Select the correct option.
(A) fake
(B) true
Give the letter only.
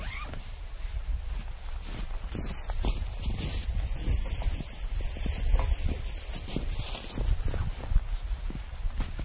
B